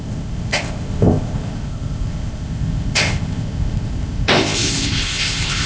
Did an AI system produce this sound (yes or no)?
yes